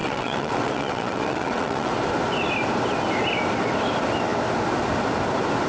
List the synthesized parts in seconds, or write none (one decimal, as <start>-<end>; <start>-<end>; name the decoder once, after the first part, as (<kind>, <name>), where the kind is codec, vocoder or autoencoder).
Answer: 0.0-1.9 (vocoder, WaveNeXt)